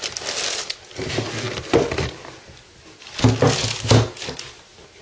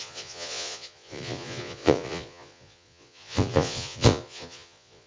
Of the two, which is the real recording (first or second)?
first